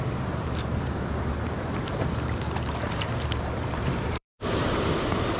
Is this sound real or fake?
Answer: fake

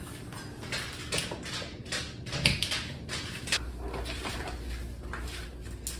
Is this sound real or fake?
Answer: real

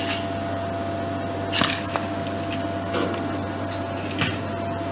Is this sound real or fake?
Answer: real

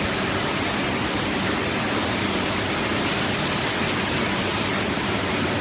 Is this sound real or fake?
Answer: real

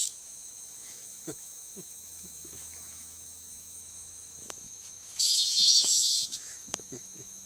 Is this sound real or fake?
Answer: fake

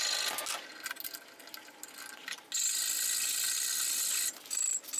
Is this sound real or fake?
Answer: real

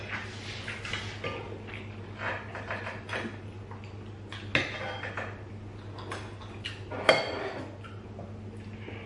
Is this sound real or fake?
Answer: real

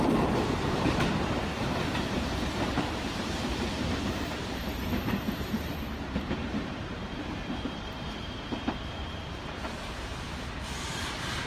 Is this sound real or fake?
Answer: fake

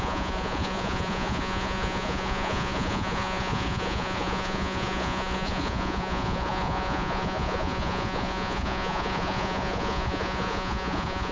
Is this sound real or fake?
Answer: fake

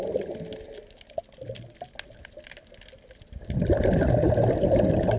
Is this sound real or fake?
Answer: real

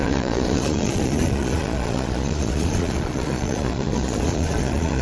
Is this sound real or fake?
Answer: fake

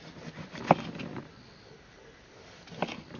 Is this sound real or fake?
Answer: real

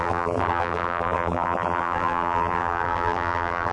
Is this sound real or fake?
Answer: fake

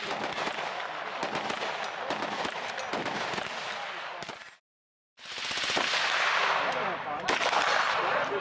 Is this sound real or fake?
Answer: real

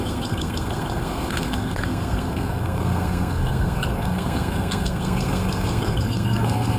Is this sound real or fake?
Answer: fake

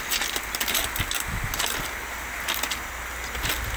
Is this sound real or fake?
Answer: real